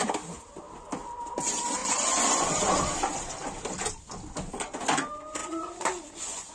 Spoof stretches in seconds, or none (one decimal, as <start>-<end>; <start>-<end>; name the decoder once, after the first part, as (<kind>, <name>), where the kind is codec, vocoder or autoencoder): 1.8-2.5 (vocoder, Vocos); 5.4-6.5